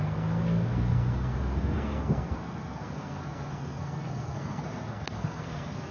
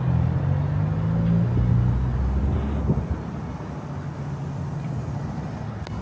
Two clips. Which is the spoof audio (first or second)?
first